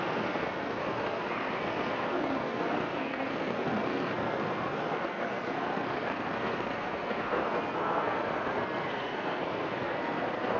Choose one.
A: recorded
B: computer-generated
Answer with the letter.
B